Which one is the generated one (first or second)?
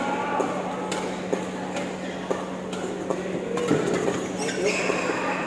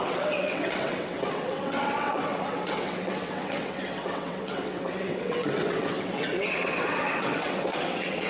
second